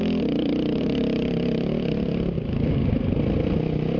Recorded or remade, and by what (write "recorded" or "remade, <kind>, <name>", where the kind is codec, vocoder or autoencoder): recorded